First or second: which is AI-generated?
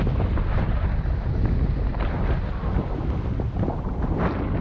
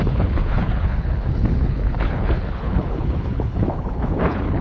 second